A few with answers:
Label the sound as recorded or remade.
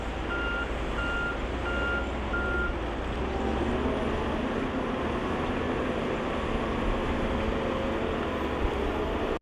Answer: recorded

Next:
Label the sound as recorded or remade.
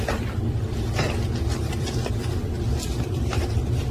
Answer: remade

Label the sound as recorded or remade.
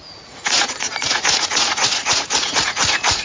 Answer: remade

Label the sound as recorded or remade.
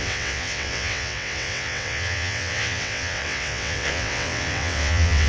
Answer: remade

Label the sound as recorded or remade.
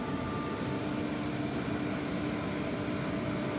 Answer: recorded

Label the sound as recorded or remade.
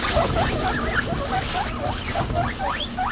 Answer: recorded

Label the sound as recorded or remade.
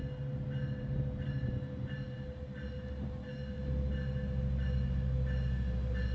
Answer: recorded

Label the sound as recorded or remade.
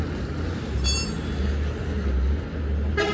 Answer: recorded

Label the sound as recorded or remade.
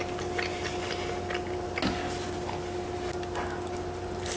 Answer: recorded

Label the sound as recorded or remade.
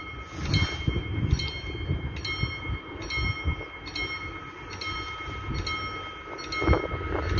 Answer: recorded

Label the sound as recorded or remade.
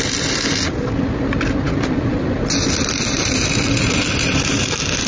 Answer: recorded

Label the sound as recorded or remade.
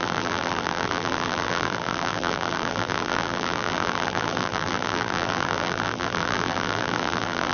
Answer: remade